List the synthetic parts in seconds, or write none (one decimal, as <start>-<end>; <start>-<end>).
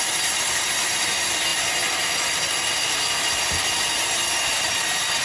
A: none